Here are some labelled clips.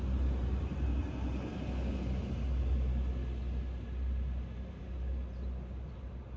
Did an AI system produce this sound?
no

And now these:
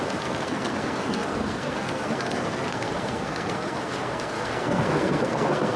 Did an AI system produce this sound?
yes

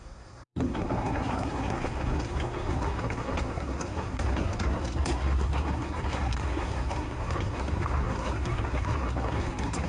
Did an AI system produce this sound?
yes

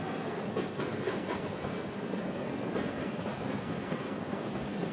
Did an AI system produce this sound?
yes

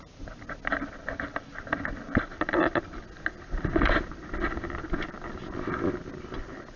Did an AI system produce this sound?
no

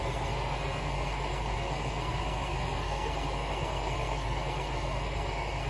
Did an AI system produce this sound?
yes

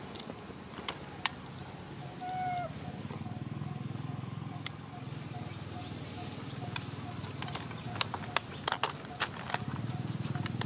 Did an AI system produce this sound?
no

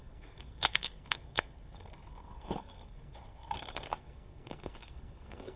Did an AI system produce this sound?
yes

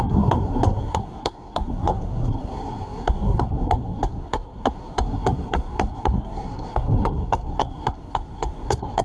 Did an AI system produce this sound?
yes